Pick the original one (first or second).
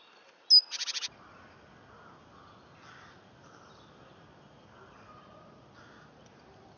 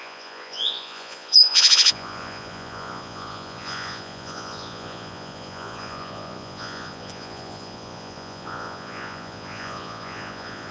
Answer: first